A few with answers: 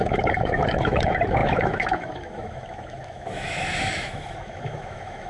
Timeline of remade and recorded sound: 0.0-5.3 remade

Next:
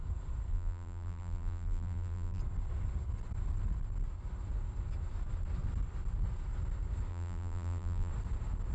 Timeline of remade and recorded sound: 0.0-0.5 recorded; 0.5-2.4 remade; 2.4-7.1 recorded; 7.1-8.1 remade; 8.1-8.7 recorded

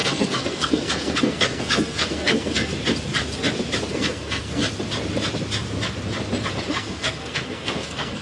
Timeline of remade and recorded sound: 0.0-2.7 remade; 2.7-3.9 recorded; 3.9-4.6 remade; 4.6-6.7 recorded; 6.7-8.2 remade

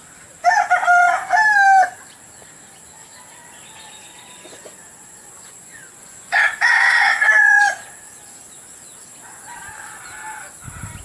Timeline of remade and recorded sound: 0.0-5.0 recorded; 5.0-7.7 remade; 7.7-11.0 recorded

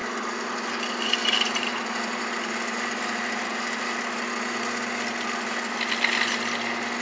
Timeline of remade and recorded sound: 0.0-1.2 recorded; 1.2-3.8 remade; 3.8-7.0 recorded